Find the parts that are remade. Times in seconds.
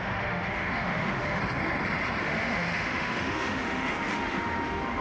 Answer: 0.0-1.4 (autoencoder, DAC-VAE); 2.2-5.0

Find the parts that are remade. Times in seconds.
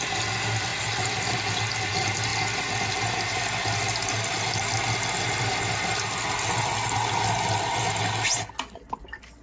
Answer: none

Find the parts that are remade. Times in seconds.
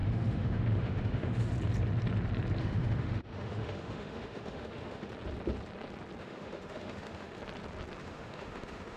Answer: 0.0-1.5 (autoencoder, DAC-VAE); 2.6-5.1; 6.2-7.4; 8.0-9.0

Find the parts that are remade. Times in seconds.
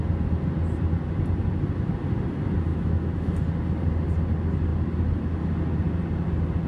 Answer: 2.7-3.3 (autoencoder, DAC-VAE)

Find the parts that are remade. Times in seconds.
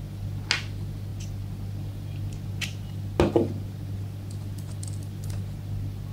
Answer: none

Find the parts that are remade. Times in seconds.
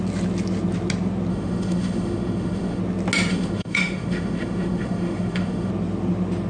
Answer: 1.3-2.8 (autoencoder, DAC-VAE); 3.3-5.7